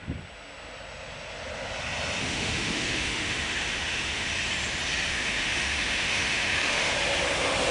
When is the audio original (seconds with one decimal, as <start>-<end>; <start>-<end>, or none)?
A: 0.0-2.2; 4.3-5.1; 6.9-7.7